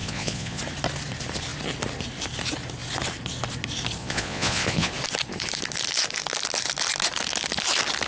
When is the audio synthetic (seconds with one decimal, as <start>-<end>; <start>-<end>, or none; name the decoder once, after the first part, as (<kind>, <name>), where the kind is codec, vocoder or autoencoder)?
0.0-0.6 (vocoder, Vocos); 4.0-4.9